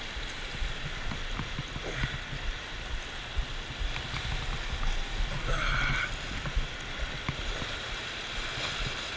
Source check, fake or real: real